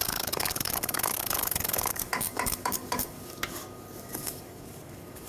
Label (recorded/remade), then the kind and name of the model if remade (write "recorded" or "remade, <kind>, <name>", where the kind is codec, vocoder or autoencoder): remade, codec, DAC